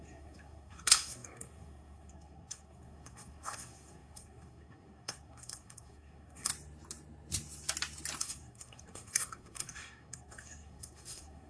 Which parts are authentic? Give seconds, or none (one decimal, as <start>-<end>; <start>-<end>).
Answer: 6.5-8.2